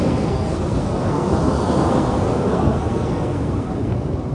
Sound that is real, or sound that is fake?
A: fake